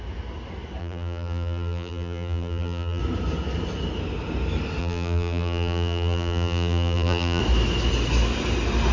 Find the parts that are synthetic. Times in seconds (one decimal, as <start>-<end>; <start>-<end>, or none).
0.8-3.0; 4.8-7.4

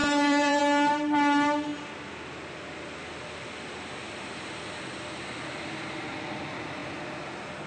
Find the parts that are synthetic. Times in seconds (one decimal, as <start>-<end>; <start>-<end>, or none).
0.0-0.6

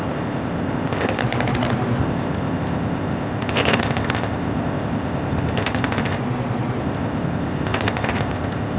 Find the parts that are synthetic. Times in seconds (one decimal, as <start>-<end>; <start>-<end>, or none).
0.0-1.2; 2.0-6.2; 6.8-8.8

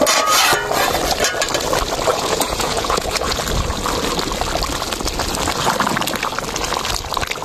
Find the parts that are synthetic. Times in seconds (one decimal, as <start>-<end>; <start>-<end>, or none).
2.1-3.4